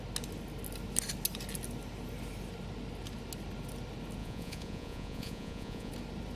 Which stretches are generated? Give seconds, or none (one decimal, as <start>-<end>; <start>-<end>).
4.2-5.9